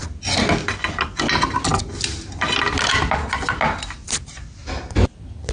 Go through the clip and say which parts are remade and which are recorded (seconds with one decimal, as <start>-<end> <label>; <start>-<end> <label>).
0.0-5.5 recorded